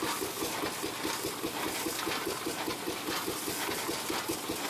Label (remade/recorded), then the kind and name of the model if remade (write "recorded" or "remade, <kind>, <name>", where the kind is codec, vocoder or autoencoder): recorded